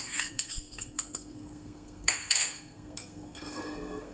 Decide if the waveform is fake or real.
fake